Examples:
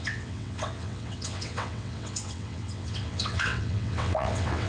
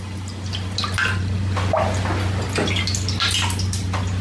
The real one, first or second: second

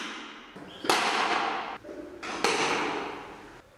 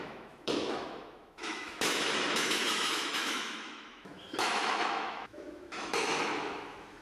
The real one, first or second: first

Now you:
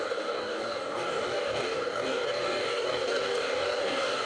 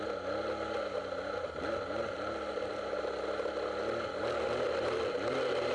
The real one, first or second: second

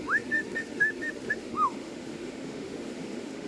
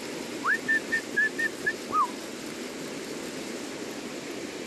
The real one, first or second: second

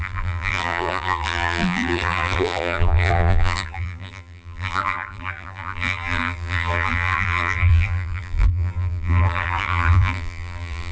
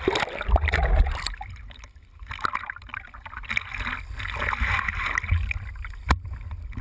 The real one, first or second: second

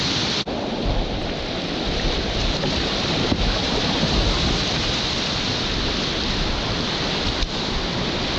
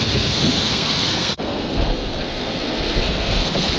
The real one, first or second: first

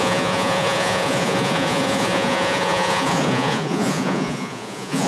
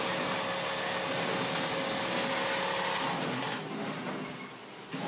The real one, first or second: second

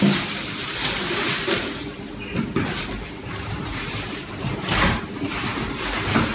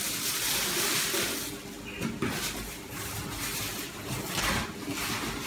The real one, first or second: second